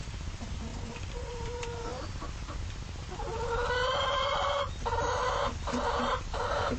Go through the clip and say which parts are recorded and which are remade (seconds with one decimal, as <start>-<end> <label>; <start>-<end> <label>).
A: 0.0-0.7 remade; 0.7-1.3 recorded; 1.3-6.8 remade